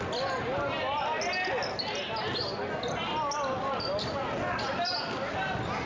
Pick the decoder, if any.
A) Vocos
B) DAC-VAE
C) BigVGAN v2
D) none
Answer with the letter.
D